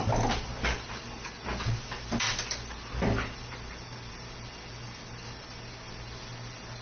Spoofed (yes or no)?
no